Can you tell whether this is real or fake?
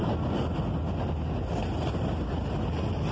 real